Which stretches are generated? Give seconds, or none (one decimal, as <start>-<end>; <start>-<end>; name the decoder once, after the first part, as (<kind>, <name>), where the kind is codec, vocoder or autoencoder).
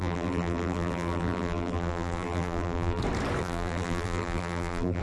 0.0-3.0 (vocoder, BigVGAN v2); 3.4-5.0